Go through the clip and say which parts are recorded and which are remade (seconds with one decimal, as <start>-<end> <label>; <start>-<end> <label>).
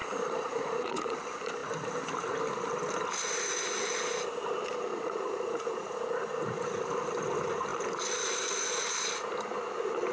0.0-1.1 remade; 1.1-4.9 recorded; 4.9-6.7 remade; 6.7-10.1 recorded